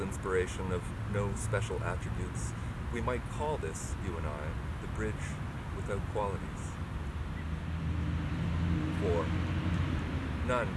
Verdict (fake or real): real